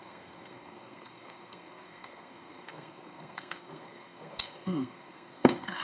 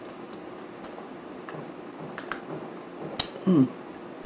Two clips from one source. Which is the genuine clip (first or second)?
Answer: second